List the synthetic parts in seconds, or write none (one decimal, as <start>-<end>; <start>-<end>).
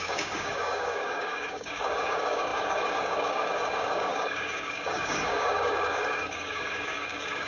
0.0-7.5